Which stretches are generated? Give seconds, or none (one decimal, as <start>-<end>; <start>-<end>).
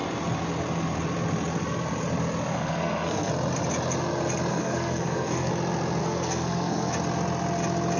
2.5-3.3; 4.5-5.5; 6.0-6.9